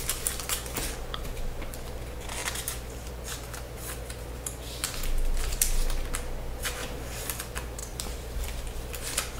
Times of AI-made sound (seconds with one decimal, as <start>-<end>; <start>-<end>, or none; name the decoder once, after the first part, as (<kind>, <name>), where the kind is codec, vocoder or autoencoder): 7.8-9.4 (vocoder, BigVGAN v2)